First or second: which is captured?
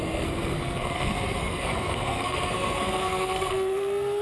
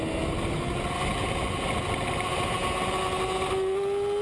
second